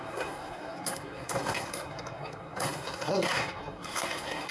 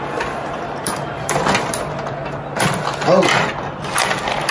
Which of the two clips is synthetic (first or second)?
first